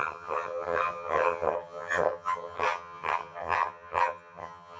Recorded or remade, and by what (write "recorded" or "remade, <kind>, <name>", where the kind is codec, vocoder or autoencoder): remade, vocoder, HiFi-GAN